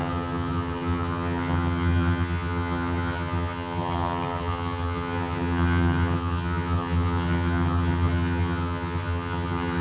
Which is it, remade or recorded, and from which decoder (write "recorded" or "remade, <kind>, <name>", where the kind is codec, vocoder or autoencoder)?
remade, vocoder, HiFi-GAN